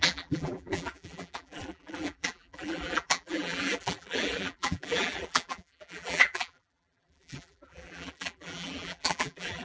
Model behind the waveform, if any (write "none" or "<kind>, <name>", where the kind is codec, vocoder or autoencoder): vocoder, BigVGAN v2